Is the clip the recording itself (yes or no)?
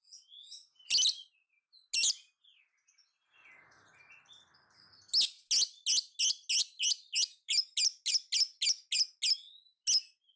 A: yes